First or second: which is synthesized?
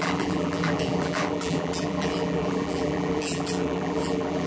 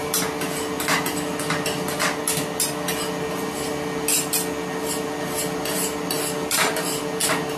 first